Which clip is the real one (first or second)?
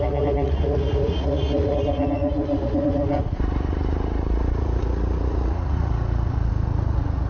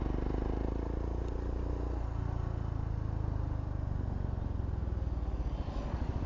second